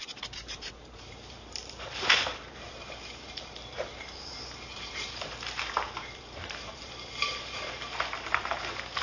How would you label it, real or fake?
fake